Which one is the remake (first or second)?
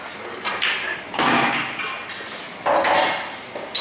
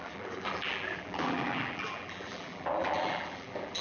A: second